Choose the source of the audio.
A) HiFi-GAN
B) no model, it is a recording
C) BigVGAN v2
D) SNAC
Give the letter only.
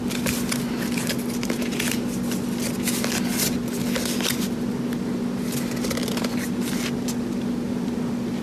B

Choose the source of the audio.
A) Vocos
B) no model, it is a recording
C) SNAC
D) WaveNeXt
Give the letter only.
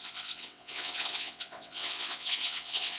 D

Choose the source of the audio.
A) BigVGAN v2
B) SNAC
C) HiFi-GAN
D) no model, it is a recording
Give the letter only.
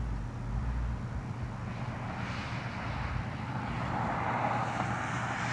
D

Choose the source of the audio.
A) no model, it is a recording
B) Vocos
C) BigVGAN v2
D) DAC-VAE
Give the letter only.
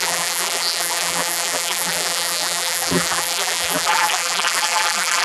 C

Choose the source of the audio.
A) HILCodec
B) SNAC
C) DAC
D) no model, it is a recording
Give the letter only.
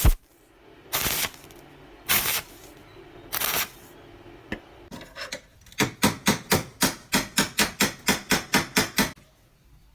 D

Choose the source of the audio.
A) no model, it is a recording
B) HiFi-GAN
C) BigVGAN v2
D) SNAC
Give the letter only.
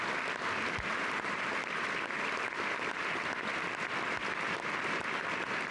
A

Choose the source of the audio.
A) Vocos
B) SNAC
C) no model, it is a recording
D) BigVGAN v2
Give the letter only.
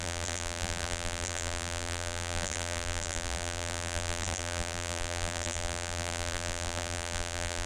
D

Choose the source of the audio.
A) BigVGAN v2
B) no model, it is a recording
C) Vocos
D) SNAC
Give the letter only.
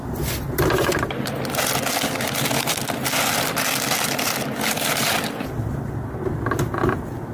B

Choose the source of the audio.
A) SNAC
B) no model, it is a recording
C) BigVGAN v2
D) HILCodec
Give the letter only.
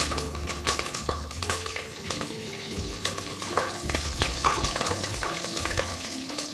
D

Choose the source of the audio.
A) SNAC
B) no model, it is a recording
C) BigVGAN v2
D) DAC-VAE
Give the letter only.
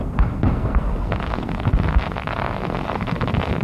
A